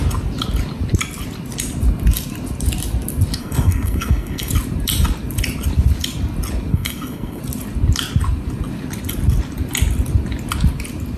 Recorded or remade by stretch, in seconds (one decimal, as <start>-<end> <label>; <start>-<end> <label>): 0.0-3.4 recorded; 3.4-4.5 remade; 4.5-6.7 recorded; 6.7-7.4 remade; 7.4-11.2 recorded